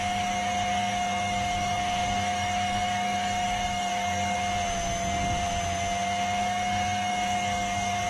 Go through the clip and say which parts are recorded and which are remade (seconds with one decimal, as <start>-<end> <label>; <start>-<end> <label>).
0.0-4.4 remade; 4.4-6.4 recorded; 6.4-8.1 remade